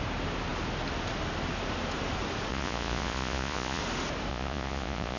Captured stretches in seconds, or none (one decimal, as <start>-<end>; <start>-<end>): 0.0-2.5; 3.8-4.3